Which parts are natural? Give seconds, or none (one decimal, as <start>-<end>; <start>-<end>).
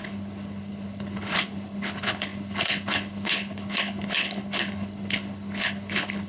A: none